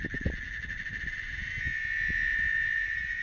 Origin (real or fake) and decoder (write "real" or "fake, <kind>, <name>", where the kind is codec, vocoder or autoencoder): real